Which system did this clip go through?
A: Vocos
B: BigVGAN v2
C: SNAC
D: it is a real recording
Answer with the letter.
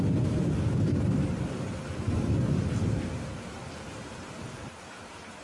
B